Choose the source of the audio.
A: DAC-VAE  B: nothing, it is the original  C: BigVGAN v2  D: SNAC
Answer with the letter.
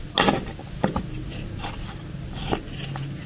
B